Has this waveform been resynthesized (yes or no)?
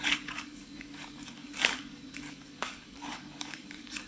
yes